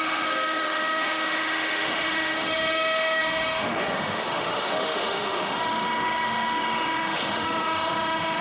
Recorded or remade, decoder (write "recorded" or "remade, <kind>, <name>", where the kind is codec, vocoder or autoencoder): remade, autoencoder, DAC-VAE